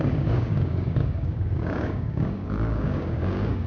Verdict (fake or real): fake